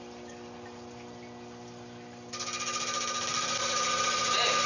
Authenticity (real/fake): real